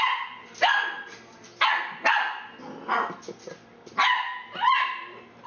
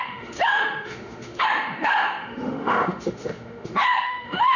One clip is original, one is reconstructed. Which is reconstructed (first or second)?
second